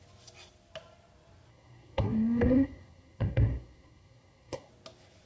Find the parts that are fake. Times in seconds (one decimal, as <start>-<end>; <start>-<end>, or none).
1.5-4.7